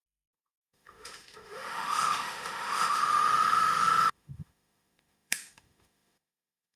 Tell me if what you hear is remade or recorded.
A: remade